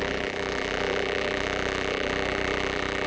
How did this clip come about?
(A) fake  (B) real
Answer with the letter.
A